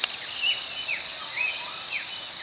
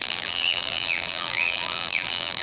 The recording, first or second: first